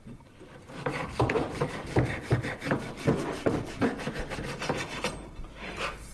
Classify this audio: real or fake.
fake